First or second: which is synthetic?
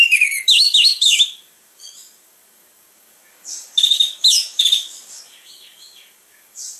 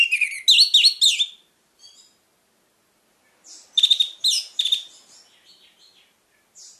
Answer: first